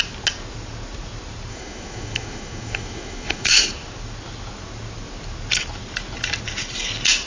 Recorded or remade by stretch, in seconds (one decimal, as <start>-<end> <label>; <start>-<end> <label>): 0.0-1.5 recorded; 1.5-3.7 remade; 3.7-7.3 recorded